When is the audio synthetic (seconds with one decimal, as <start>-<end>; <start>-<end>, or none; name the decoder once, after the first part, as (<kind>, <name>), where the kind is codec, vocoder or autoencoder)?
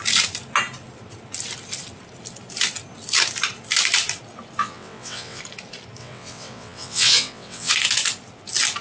4.6-5.4 (vocoder, WaveNeXt); 6.0-7.7